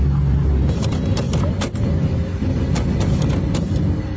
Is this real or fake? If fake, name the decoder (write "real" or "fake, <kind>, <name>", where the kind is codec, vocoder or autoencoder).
real